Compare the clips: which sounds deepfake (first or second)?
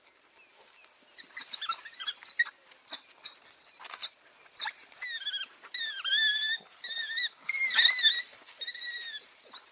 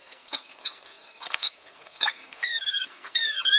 second